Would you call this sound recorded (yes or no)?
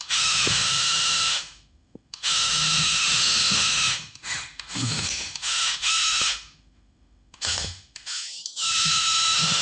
no